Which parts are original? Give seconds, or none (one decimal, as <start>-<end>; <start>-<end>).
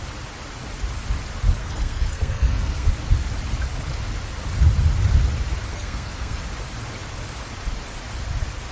0.0-1.6; 2.9-5.7; 6.4-8.7